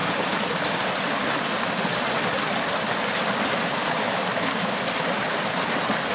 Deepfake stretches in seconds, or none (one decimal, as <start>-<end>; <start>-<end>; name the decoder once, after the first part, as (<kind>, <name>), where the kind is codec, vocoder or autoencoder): none